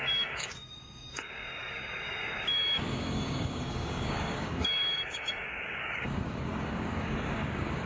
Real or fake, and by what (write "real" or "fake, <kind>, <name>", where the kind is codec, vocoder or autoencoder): fake, codec, DAC